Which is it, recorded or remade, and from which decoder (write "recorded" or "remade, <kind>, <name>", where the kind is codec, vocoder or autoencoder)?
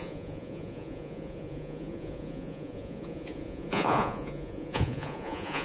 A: remade, vocoder, Vocos